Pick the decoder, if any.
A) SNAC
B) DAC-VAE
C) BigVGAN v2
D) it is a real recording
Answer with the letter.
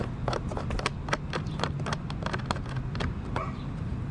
D